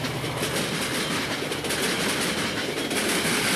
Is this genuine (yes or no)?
yes